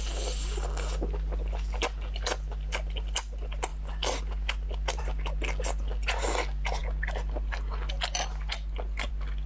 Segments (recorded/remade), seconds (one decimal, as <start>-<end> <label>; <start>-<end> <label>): 0.0-9.5 recorded